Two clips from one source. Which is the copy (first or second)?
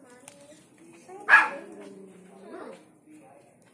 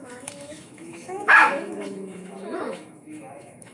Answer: second